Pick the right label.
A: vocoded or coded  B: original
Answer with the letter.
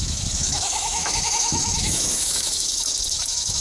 A